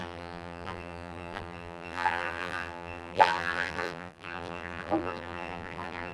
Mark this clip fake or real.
fake